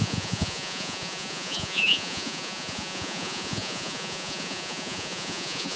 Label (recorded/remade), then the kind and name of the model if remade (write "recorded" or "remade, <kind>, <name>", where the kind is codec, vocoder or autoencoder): remade, vocoder, Vocos